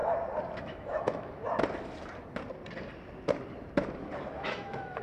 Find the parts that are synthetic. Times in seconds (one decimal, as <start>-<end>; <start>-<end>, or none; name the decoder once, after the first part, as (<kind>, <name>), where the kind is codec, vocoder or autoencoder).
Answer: 0.6-1.4 (autoencoder, DAC-VAE); 4.4-5.0

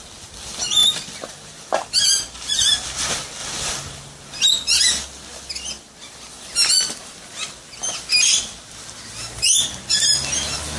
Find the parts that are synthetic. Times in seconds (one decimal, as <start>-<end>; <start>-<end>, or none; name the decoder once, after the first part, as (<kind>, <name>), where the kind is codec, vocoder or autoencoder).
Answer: none

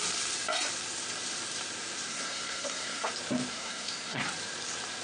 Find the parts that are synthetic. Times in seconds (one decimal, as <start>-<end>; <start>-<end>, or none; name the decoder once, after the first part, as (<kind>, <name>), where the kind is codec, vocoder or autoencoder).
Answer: 2.1-3.1 (codec, SNAC); 3.5-4.2

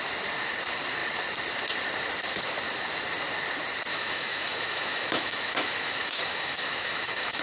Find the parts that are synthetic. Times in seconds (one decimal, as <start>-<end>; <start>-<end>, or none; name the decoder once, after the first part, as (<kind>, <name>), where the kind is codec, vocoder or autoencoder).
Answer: 3.9-7.4 (autoencoder, DAC-VAE)